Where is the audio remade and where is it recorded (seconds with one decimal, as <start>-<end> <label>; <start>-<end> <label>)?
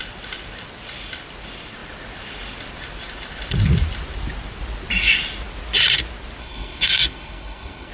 0.0-6.4 recorded; 6.4-7.9 remade